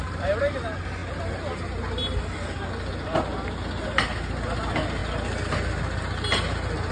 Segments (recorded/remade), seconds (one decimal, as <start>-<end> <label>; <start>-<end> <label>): 0.0-6.9 recorded

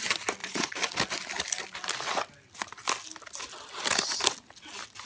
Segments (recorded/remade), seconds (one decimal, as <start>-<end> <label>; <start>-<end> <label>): 0.0-0.4 recorded; 0.4-0.9 remade; 0.9-5.0 recorded